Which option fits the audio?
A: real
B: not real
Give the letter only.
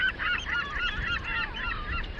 B